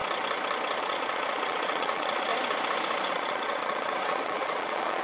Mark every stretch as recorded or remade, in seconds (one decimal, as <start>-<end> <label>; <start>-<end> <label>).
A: 0.0-0.8 recorded; 0.8-2.3 remade; 2.3-3.1 recorded; 3.1-5.0 remade